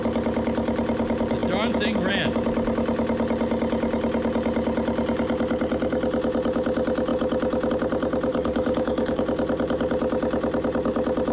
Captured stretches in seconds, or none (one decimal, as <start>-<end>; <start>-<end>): 0.0-8.3; 9.2-11.3